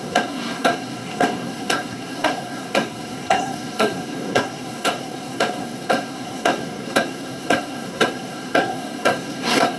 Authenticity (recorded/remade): remade